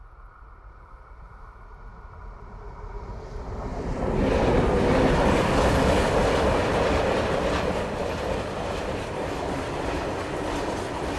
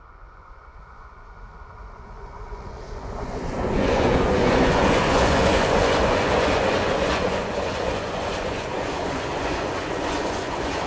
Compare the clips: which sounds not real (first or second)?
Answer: second